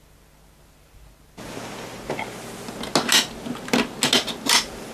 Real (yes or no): yes